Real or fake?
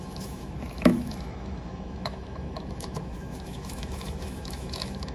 fake